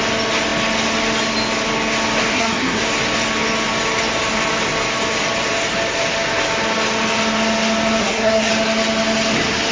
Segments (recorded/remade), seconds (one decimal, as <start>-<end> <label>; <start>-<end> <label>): 0.0-2.3 recorded; 2.3-2.8 remade; 2.8-8.0 recorded; 8.0-8.5 remade; 8.5-9.7 recorded